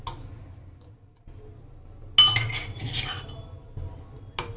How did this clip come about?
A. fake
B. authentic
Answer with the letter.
B